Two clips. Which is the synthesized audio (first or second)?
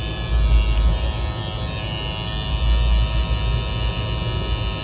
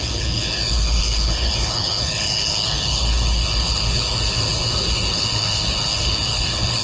second